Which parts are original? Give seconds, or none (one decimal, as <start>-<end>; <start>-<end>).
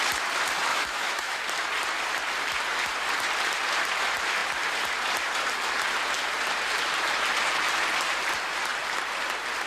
0.0-0.7; 1.4-9.7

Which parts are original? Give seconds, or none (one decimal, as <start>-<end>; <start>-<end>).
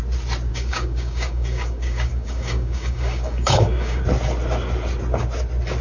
0.0-0.5; 4.0-5.8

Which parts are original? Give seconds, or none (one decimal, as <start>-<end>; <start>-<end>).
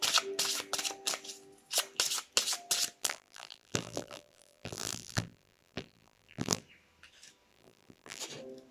0.0-3.0; 6.6-7.5; 8.2-8.7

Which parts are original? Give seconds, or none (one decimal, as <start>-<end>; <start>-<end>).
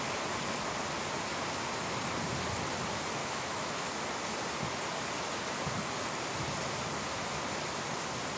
0.0-3.2; 3.9-8.4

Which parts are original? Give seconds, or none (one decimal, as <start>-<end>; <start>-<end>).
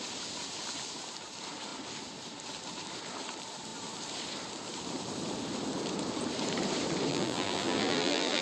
0.0-7.1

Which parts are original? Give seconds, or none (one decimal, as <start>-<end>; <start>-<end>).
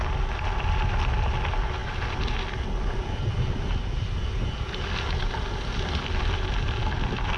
0.0-7.4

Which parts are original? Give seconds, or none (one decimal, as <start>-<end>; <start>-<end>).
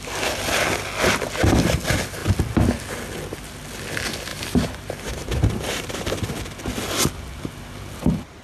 0.0-4.3; 6.0-8.4